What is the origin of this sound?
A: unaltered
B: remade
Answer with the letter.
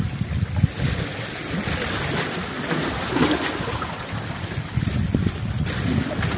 A